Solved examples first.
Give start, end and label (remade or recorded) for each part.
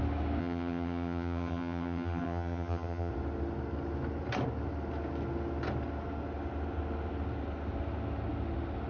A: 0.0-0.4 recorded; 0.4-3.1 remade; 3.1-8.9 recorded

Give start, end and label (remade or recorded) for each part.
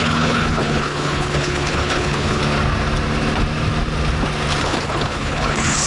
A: 0.0-2.4 remade; 2.4-4.6 recorded; 4.6-5.9 remade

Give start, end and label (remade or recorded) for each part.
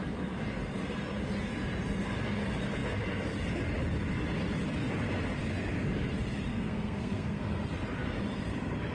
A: 0.0-6.5 recorded; 6.5-7.6 remade; 7.6-8.9 recorded